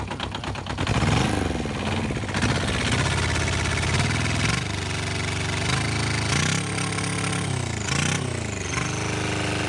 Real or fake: real